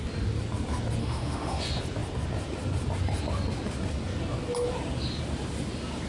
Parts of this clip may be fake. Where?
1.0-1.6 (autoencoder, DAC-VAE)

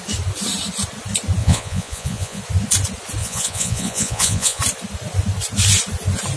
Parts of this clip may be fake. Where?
1.4-2.4 (vocoder, Vocos); 3.2-4.6

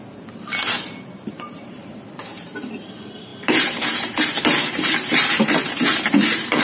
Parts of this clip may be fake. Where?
0.0-6.6 (vocoder, BigVGAN v2)

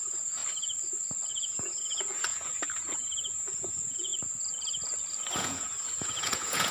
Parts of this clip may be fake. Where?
0.0-0.4 (vocoder, Vocos); 1.3-4.1; 5.4-6.7

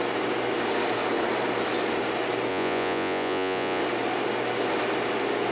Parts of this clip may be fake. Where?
2.5-3.8 (vocoder, Vocos)

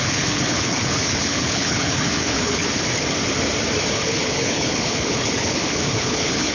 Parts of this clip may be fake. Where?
0.0-2.6 (codec, HILCodec); 3.9-6.5